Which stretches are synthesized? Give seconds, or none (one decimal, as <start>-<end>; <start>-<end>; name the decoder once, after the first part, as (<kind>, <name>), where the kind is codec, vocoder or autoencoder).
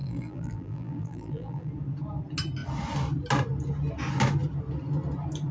0.0-1.7 (vocoder, BigVGAN v2)